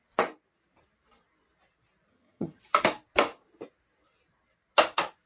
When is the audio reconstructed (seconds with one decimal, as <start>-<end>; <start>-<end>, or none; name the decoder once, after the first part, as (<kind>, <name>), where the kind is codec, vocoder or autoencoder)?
2.1-2.6 (vocoder, HiFi-GAN)